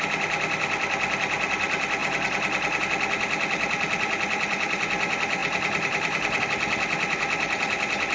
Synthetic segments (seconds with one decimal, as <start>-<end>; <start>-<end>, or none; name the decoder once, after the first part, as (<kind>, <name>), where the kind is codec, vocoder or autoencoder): 5.4-6.4 (vocoder, BigVGAN v2)